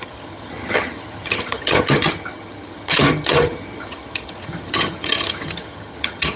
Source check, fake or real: fake